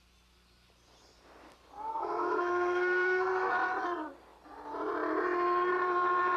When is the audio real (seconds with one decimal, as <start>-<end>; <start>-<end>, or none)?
0.0-1.9; 3.5-6.4